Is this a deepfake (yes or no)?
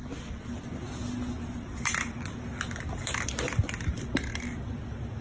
no